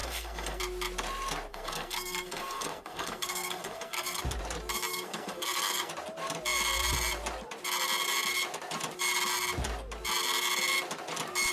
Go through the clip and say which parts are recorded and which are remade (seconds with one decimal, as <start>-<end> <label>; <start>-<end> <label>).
0.0-0.6 remade; 0.6-1.5 recorded; 1.5-4.2 remade; 4.2-4.9 recorded; 4.9-5.9 remade; 5.9-11.5 recorded